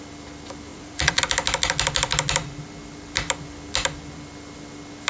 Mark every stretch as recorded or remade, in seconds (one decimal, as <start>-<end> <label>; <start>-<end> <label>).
0.0-0.7 recorded; 0.7-1.2 remade; 1.2-5.1 recorded